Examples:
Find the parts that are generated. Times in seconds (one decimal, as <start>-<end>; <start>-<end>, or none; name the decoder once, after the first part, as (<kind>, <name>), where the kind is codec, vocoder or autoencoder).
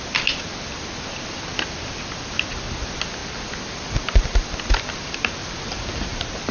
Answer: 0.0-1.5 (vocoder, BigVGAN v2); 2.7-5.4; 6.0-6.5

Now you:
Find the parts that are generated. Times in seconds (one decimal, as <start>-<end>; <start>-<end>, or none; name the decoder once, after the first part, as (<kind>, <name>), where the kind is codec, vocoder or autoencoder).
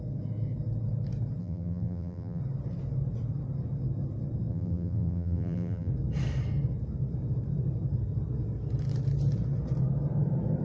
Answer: 1.4-2.4 (vocoder, BigVGAN v2); 4.5-5.9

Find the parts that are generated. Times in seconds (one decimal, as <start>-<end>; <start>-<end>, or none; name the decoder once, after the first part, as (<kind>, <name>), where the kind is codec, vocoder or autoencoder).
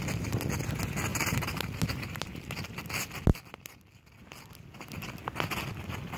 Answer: 1.1-2.8 (vocoder, BigVGAN v2)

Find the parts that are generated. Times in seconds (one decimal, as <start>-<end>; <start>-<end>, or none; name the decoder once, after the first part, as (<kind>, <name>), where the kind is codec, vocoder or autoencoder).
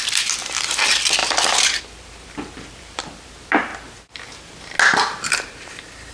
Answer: 0.0-1.2 (vocoder, BigVGAN v2); 1.8-3.7; 5.3-6.1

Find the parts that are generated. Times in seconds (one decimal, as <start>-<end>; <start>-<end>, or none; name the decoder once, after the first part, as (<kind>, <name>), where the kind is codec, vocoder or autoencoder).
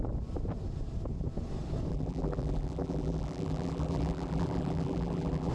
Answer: 1.9-5.5 (vocoder, BigVGAN v2)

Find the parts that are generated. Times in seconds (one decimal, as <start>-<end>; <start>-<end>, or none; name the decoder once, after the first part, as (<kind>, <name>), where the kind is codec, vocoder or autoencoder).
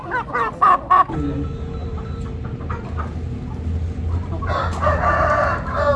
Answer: 1.8-2.6 (vocoder, BigVGAN v2)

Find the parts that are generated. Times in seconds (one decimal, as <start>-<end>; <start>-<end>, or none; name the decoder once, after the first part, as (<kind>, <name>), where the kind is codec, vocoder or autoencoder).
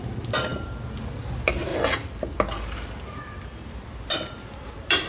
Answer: 0.0-1.7 (vocoder, BigVGAN v2); 3.7-5.1